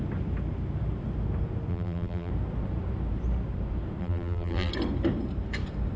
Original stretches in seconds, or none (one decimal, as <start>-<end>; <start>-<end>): 0.0-1.7; 2.3-4.0; 4.7-6.0